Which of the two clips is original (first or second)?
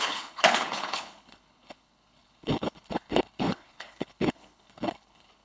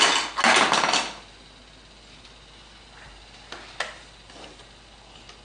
second